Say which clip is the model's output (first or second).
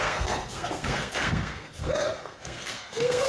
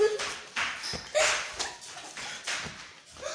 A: first